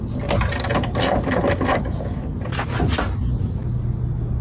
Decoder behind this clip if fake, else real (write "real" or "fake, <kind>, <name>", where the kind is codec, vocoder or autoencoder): real